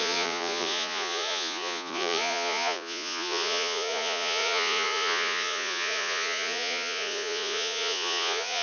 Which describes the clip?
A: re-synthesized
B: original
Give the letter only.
A